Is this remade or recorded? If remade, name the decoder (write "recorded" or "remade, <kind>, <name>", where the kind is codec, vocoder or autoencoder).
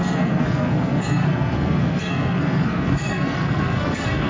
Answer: remade, codec, SNAC